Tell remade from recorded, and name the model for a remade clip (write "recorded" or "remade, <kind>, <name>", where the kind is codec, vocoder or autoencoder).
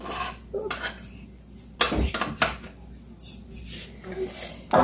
recorded